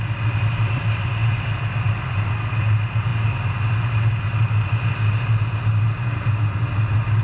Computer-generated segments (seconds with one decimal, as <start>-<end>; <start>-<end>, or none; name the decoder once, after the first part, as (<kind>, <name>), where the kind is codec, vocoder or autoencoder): none